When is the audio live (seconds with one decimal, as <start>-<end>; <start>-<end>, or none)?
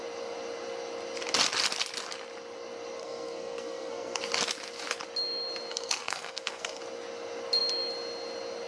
0.0-3.0; 4.2-5.7; 6.8-8.7